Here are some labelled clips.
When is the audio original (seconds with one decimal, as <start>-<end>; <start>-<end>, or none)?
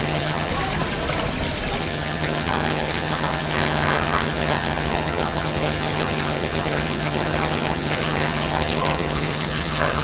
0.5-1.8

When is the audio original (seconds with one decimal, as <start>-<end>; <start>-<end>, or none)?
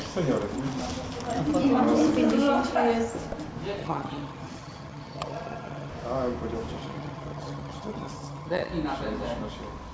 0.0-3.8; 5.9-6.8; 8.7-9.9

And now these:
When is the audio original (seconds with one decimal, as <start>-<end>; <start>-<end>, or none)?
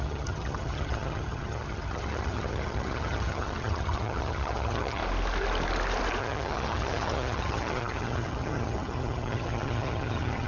5.0-6.2